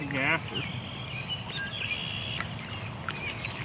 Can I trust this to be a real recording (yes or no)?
yes